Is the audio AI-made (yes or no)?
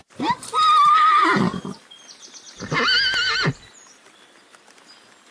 no